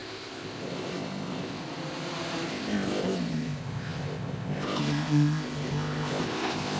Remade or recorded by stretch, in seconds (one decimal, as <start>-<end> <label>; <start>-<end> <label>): 0.0-1.6 remade; 1.6-2.5 recorded; 2.5-6.8 remade